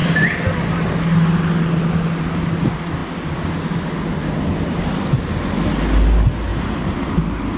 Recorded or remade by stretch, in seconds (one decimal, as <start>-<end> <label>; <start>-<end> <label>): 0.0-6.5 recorded; 6.5-7.1 remade; 7.1-7.6 recorded